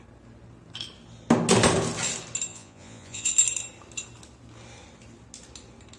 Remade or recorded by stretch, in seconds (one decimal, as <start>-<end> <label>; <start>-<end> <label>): 0.0-2.5 recorded; 2.5-3.3 remade; 3.3-6.0 recorded